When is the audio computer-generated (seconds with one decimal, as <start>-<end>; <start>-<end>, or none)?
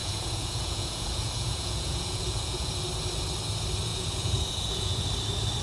0.0-2.8; 3.9-5.1